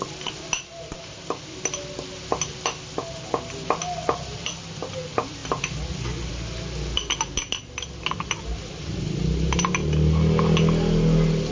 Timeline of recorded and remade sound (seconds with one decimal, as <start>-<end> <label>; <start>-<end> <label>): 0.0-11.5 recorded